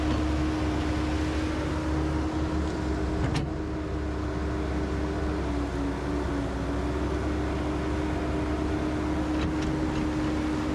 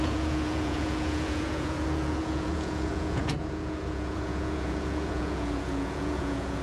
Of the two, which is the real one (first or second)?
first